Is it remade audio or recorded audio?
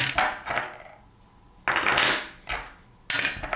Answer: recorded